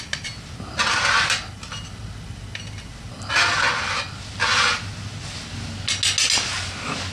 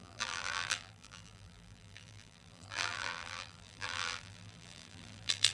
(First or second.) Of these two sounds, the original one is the first